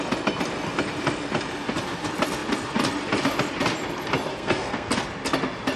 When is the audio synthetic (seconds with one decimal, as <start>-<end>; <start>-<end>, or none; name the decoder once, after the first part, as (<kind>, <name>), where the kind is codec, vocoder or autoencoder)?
4.3-4.9 (codec, SNAC)